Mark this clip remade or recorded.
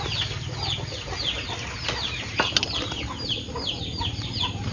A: recorded